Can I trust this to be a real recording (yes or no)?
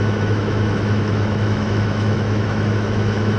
no